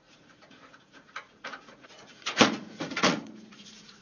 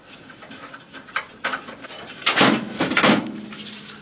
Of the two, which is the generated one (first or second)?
first